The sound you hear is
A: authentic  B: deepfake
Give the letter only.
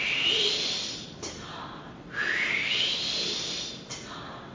B